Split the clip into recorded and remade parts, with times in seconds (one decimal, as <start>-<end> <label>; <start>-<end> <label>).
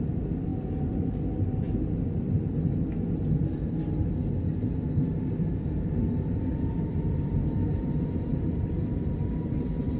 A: 0.0-10.0 recorded